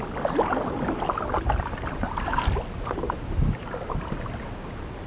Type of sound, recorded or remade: recorded